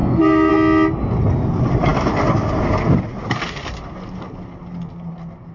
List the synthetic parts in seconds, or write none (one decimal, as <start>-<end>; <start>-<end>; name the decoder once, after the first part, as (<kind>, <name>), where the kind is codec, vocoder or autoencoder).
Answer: 0.0-0.5 (codec, SNAC)